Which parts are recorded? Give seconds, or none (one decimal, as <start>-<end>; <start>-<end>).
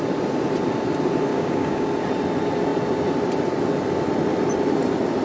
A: 0.0-1.3; 1.9-5.2